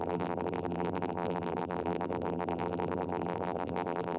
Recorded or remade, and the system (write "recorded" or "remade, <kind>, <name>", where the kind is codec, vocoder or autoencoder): remade, vocoder, BigVGAN v2